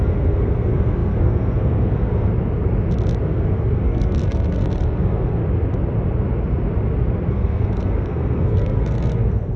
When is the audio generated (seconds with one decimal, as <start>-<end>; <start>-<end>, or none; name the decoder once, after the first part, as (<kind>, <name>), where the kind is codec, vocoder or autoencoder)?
0.0-2.3 (codec, SNAC); 3.2-5.4; 7.3-9.6